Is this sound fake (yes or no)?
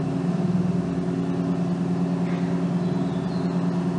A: no